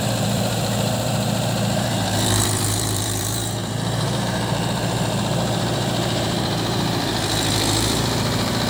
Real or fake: fake